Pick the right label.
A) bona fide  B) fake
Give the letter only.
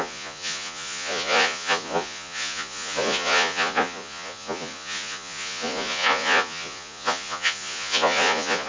B